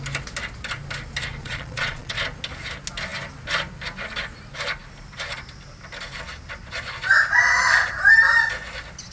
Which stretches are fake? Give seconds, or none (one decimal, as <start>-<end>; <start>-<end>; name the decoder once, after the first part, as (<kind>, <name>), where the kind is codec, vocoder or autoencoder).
1.4-2.2 (vocoder, Vocos)

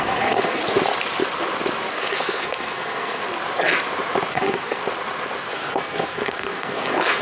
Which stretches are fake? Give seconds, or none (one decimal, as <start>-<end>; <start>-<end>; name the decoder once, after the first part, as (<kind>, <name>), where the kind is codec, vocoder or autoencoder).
0.0-0.6 (codec, SNAC); 1.9-3.2; 4.3-4.8; 5.5-7.2